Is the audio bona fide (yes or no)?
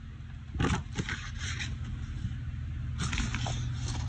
yes